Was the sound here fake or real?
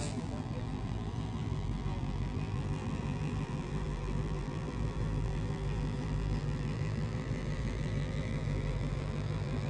fake